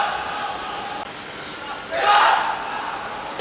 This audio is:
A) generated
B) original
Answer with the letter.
B